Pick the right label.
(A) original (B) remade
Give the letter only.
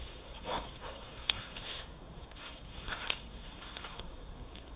B